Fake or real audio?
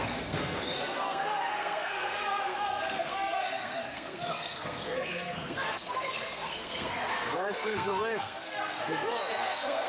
fake